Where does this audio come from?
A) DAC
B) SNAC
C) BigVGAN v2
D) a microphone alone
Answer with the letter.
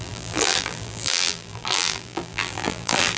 C